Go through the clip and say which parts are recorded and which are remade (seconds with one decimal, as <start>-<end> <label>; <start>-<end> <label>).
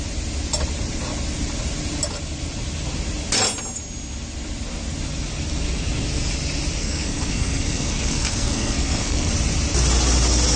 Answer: 0.0-6.8 recorded; 6.8-9.3 remade; 9.3-10.6 recorded